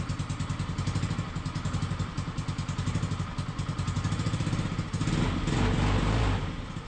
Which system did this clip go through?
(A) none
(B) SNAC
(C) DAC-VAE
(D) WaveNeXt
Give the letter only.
A